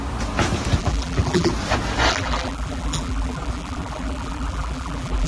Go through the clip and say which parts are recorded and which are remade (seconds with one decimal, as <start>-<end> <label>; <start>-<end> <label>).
0.0-0.8 recorded; 0.8-1.5 remade; 1.5-2.1 recorded; 2.1-5.3 remade